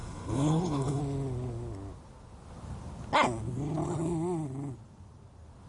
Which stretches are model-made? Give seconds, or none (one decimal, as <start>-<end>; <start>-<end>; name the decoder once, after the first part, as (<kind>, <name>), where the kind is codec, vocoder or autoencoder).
0.0-1.0 (codec, HILCodec)